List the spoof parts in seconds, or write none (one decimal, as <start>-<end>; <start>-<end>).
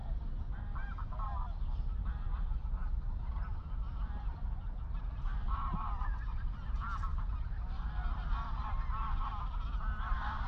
none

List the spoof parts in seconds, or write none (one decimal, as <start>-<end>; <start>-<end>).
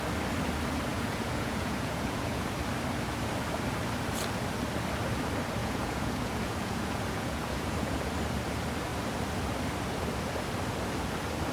0.9-2.5; 5.6-8.1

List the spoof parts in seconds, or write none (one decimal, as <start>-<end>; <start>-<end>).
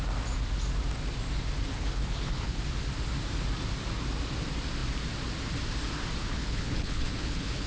1.7-2.6; 6.3-7.7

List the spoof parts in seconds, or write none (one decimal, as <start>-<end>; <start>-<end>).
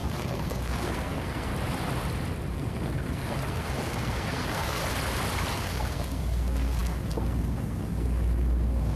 0.0-1.5; 2.5-4.8; 5.5-9.0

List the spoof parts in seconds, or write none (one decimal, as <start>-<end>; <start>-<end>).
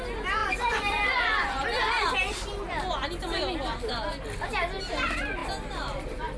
0.4-2.1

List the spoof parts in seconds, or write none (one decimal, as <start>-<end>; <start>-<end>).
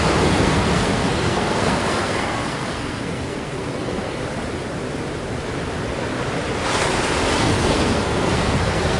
0.0-4.2; 7.4-9.0